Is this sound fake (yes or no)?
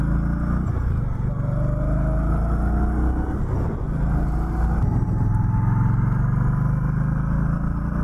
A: no